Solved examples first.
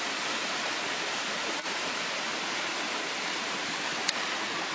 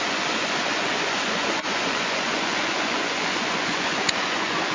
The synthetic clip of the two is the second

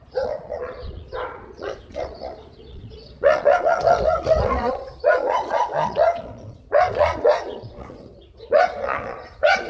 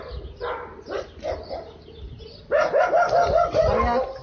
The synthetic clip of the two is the first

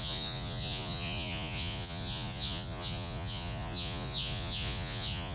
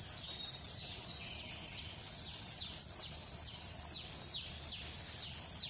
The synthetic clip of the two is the first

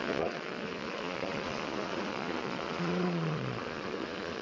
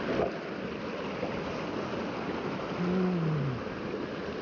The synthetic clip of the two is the first